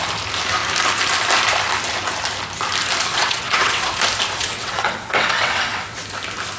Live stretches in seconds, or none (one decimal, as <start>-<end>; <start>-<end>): 0.0-3.1; 4.0-4.4; 6.0-6.6